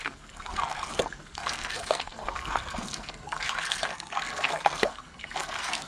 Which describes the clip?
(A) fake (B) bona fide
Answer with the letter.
A